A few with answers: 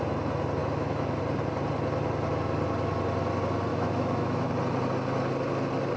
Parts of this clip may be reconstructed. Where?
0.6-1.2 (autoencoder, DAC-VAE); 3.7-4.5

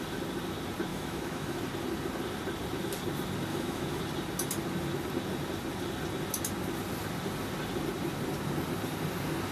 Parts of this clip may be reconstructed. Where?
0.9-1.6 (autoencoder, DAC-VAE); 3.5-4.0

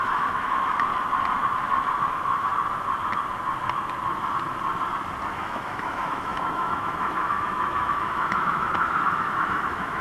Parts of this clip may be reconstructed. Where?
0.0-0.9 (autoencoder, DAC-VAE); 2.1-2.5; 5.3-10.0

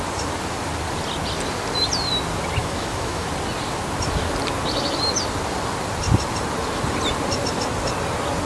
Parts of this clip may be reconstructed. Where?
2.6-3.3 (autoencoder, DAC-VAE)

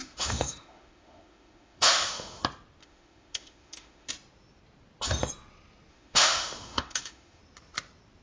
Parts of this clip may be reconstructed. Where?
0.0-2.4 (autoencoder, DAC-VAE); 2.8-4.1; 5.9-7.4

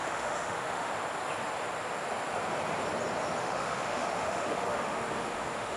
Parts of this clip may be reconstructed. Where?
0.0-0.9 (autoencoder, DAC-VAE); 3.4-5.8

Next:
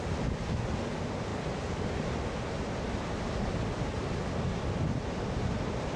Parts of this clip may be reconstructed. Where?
none

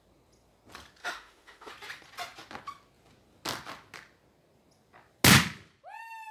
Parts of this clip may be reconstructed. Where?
1.0-1.7 (autoencoder, DAC-VAE)